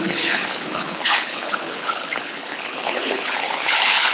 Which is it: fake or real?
fake